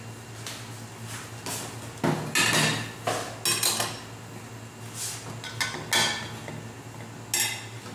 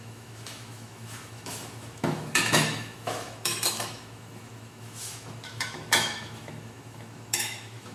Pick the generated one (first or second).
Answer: second